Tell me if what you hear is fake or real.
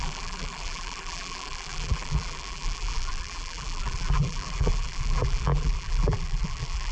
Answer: fake